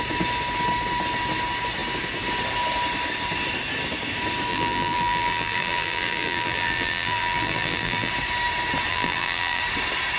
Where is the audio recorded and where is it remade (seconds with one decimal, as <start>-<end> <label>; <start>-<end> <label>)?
0.0-4.5 recorded; 4.5-8.1 remade; 8.1-8.9 recorded; 8.9-9.6 remade; 9.6-10.2 recorded